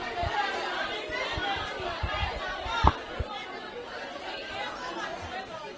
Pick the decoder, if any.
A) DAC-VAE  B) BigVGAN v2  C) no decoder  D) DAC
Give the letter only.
B